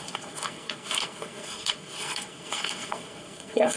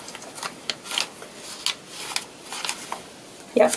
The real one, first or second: second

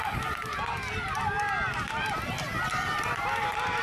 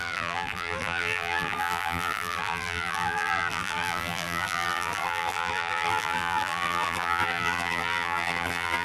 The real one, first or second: first